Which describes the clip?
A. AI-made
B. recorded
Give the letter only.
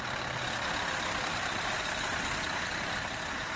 B